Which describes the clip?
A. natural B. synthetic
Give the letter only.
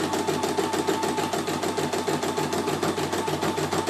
A